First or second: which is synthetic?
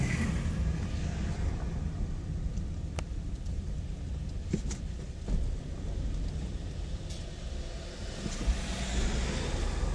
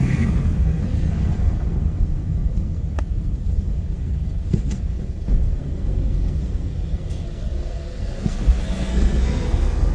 second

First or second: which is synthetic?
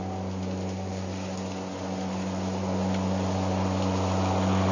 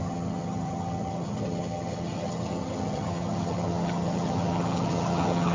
second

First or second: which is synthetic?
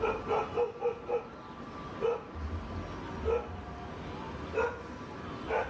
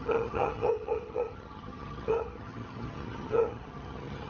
second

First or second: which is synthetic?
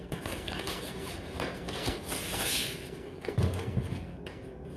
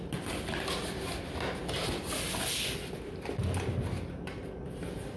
first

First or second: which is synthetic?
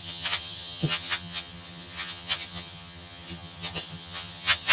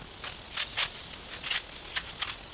first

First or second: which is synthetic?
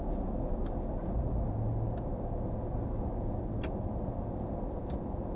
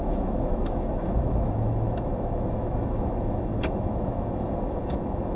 second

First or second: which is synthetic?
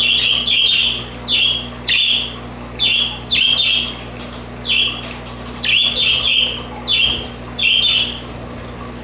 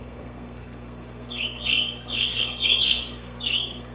second